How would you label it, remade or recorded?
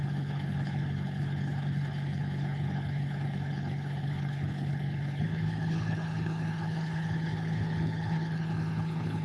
remade